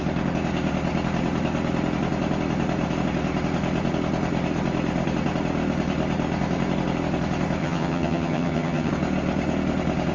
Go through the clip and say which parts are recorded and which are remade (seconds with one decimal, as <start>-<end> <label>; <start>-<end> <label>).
0.0-7.6 recorded; 7.6-8.9 remade; 8.9-10.1 recorded